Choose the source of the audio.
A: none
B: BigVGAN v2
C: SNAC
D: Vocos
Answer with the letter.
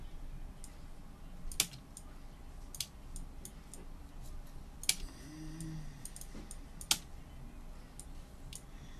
A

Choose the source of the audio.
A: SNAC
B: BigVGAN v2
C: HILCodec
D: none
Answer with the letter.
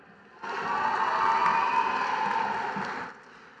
D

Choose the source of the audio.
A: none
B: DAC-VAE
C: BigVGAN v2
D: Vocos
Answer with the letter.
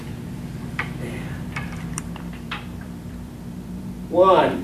C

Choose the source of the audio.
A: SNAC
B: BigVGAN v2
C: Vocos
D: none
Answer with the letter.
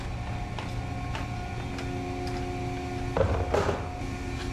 D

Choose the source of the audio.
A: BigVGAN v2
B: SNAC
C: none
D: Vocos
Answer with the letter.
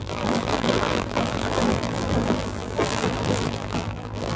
A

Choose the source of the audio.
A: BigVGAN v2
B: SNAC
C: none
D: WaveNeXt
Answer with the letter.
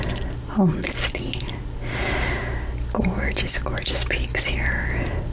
C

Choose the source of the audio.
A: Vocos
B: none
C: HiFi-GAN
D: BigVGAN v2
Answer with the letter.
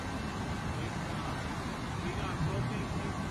B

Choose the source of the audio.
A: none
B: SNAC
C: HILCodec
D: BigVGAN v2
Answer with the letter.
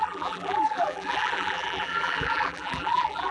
D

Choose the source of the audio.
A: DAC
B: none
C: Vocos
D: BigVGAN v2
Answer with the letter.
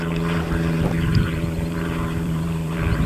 D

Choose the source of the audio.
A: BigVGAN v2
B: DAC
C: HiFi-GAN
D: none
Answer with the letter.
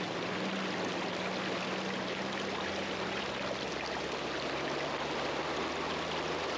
D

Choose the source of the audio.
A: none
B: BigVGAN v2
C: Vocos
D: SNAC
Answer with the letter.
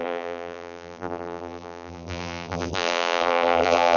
B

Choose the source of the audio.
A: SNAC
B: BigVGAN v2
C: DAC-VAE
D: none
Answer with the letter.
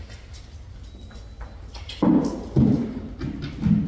D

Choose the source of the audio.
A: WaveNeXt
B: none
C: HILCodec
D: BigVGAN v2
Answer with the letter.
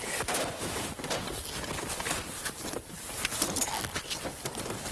B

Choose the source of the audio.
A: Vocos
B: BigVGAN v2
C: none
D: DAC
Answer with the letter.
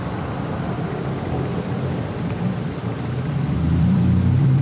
B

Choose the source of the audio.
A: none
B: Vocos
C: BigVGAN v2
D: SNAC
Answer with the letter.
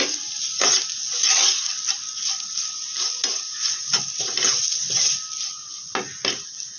A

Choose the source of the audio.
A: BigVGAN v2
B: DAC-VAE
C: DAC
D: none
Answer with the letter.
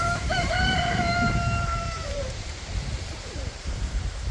A